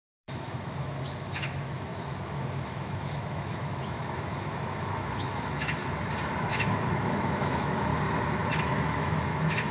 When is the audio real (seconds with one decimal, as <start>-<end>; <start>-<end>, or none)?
5.8-6.4; 7.9-8.6